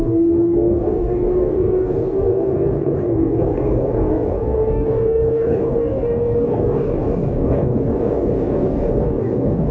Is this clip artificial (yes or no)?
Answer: yes